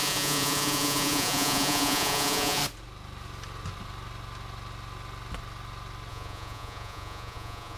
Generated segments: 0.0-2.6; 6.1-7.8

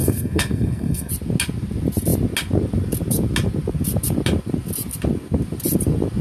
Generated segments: 0.0-1.1

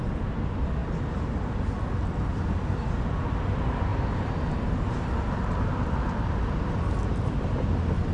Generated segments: 3.9-4.6

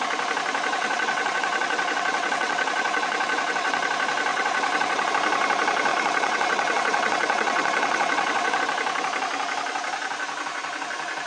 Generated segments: 0.7-3.9; 4.3-5.1; 5.9-8.6

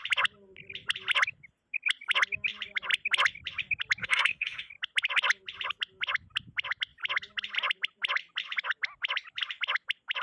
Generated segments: 4.0-4.7